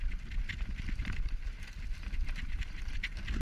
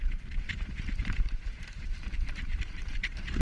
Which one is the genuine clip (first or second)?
first